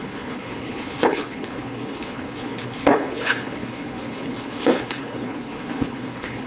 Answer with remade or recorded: remade